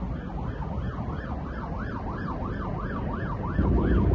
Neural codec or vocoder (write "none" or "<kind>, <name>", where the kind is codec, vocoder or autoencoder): none